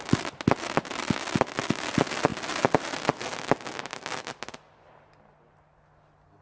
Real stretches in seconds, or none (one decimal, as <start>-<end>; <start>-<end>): 0.0-2.3; 3.2-3.9; 4.8-6.4